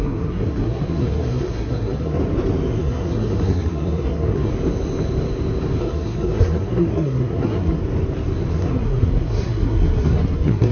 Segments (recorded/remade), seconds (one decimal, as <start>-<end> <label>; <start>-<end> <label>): 0.0-2.2 remade; 2.2-2.8 recorded; 2.8-4.5 remade; 4.5-5.8 recorded; 5.8-7.8 remade; 7.8-8.5 recorded; 8.5-10.7 remade